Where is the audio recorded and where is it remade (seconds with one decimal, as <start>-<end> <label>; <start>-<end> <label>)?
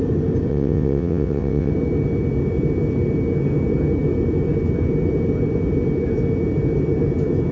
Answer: 0.0-0.5 recorded; 0.5-1.7 remade; 1.7-7.5 recorded